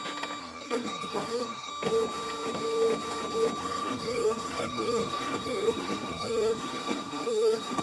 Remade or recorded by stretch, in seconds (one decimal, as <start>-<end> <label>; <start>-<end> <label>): 0.0-0.4 recorded; 0.4-1.7 remade; 1.7-3.6 recorded; 3.6-7.8 remade